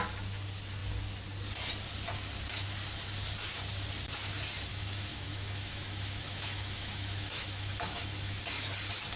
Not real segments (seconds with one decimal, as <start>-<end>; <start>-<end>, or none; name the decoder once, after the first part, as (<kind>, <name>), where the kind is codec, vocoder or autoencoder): 4.7-8.4 (autoencoder, DAC-VAE)